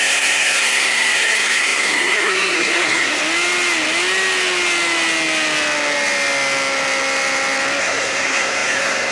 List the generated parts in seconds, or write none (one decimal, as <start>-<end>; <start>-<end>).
0.0-3.2; 7.8-9.1

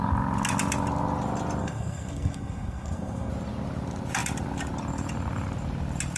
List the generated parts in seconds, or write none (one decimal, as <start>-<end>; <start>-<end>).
1.6-3.3

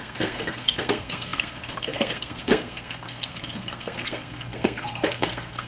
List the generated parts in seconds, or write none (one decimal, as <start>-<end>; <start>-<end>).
0.0-5.7

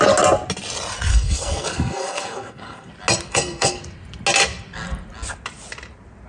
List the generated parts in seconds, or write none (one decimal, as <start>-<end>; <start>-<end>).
1.1-2.9; 3.3-3.8